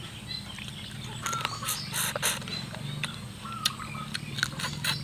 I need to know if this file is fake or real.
real